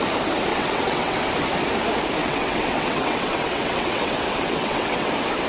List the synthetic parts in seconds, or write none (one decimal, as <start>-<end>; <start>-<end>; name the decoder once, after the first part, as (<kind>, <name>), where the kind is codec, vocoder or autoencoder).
0.5-1.1 (vocoder, WaveNeXt); 2.2-5.1